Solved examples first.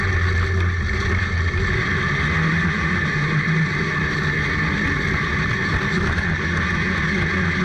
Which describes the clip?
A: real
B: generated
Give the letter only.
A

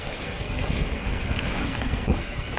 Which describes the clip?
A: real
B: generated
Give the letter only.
B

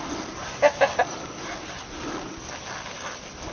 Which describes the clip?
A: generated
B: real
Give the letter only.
B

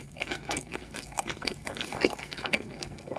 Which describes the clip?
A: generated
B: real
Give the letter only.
A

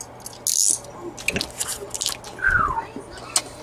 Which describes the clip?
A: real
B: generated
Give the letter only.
A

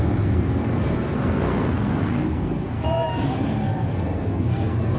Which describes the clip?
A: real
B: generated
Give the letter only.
B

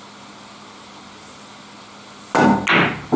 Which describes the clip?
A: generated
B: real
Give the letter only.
B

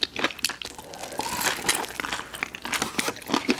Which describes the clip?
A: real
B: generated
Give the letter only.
A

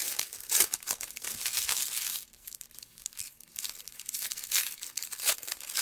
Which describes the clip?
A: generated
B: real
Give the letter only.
A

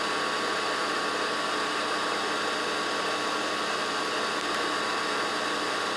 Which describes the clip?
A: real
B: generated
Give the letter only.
A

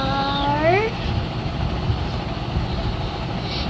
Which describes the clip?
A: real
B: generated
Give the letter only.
A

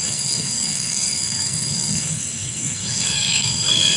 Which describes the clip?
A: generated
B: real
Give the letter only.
A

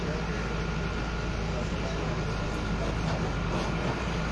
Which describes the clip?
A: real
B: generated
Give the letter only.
A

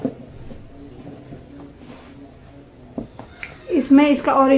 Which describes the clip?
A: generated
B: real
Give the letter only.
B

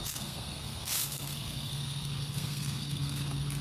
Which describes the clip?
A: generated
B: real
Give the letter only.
A